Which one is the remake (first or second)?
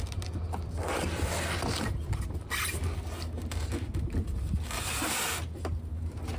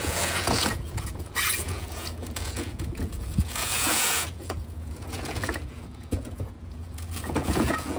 second